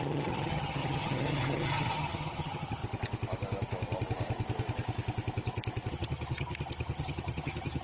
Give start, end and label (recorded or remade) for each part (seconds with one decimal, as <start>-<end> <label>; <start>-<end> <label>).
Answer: 0.0-2.8 remade; 2.8-5.9 recorded; 5.9-7.8 remade